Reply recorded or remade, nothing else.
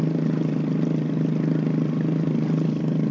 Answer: recorded